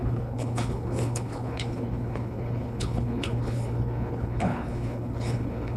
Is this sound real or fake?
fake